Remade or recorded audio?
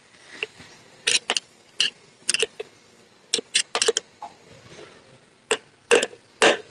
recorded